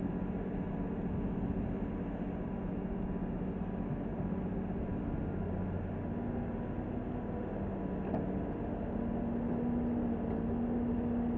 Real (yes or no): yes